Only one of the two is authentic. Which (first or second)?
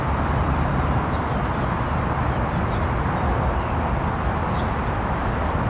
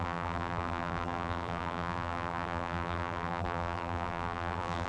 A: first